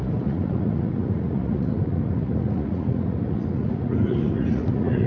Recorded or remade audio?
remade